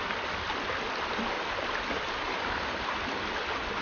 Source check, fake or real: real